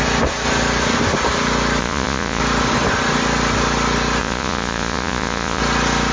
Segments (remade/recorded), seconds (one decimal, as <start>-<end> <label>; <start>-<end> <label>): 0.0-1.8 recorded; 1.8-2.4 remade; 2.4-4.2 recorded; 4.2-5.6 remade; 5.6-6.1 recorded